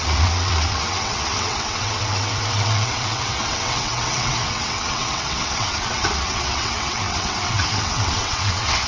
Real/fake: fake